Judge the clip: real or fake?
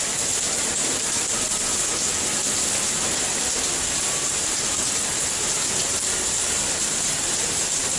real